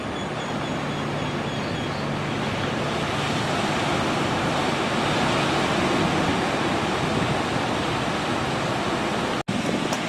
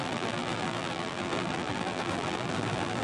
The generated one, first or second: second